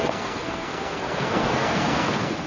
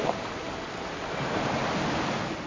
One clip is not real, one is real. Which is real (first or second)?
second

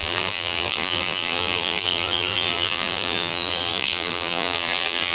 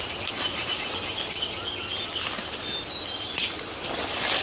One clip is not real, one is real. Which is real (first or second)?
second